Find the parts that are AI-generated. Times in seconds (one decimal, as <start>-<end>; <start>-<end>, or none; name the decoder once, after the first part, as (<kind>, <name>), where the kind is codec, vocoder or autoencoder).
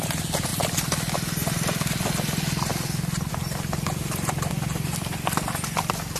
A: none